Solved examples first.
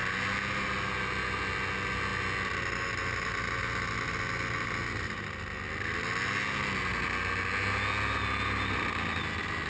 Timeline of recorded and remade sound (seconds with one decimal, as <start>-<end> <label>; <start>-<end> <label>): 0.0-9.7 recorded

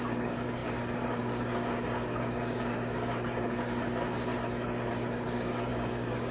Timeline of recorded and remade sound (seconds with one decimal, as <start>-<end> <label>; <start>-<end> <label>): 0.0-4.3 remade; 4.3-4.9 recorded; 4.9-6.3 remade

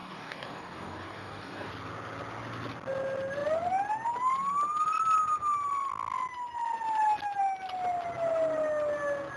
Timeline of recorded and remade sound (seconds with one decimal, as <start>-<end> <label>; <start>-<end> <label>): 0.0-1.7 remade; 1.7-9.4 recorded

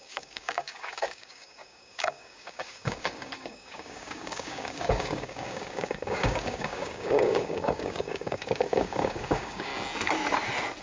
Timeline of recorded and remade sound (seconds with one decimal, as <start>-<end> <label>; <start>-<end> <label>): 0.0-9.7 remade; 9.7-10.8 recorded